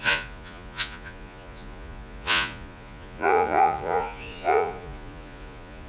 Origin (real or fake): fake